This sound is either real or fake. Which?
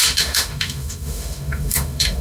fake